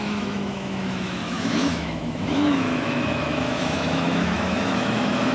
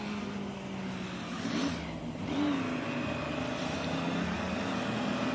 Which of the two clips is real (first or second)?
second